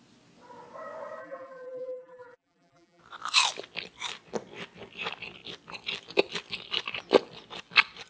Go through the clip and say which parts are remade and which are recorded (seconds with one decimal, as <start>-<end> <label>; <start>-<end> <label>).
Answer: 0.0-1.2 recorded; 1.2-3.0 remade; 3.0-8.1 recorded

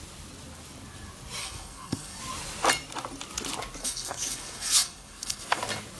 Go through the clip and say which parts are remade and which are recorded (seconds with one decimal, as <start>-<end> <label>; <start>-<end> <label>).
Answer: 0.0-1.4 recorded; 1.4-2.2 remade; 2.2-3.8 recorded; 3.8-5.6 remade; 5.6-6.0 recorded

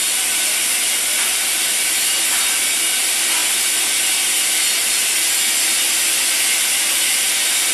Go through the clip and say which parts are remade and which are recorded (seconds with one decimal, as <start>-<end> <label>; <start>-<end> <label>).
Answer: 0.0-7.7 recorded

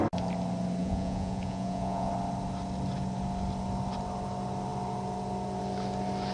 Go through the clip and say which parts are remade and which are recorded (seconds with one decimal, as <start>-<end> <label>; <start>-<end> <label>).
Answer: 0.0-0.8 recorded; 0.8-2.1 remade; 2.1-6.3 recorded